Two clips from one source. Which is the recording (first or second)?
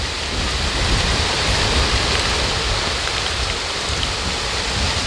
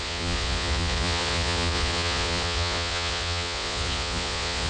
first